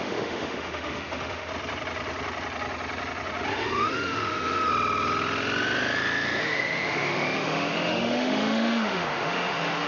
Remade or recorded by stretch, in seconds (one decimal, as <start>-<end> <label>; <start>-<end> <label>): 0.0-1.5 remade; 1.5-3.5 recorded; 3.5-4.7 remade; 4.7-6.4 recorded; 6.4-9.9 remade